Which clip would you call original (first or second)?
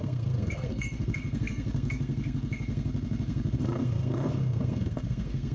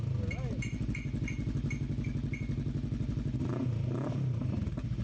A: second